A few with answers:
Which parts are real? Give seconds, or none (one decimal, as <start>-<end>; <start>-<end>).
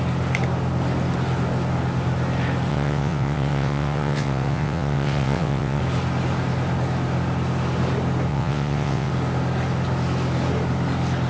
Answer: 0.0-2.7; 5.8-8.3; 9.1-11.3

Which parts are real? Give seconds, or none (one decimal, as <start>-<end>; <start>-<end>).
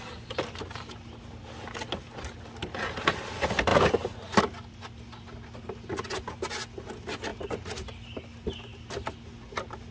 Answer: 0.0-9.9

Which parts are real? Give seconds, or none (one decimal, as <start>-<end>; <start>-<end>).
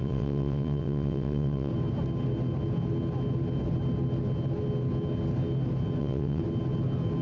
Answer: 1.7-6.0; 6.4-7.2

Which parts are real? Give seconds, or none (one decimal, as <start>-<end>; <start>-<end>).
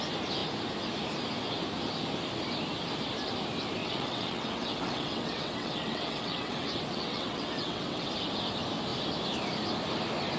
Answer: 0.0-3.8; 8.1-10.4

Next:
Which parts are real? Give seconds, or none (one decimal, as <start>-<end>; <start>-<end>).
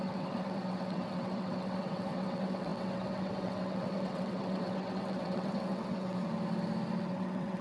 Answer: 6.2-7.1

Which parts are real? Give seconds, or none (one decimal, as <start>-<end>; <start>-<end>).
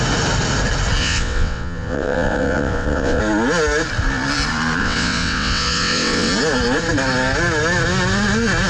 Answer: 0.0-1.0; 3.2-4.8; 6.3-8.7